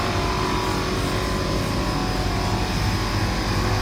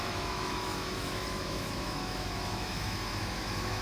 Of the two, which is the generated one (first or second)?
second